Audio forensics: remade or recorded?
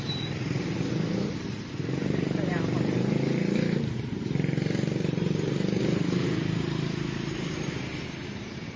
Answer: remade